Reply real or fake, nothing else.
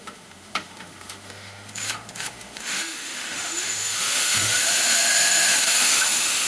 fake